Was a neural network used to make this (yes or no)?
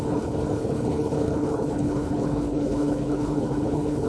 yes